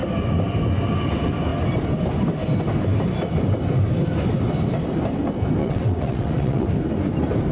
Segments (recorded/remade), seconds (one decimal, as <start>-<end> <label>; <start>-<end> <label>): 0.0-5.6 recorded; 5.6-6.7 remade; 6.7-7.5 recorded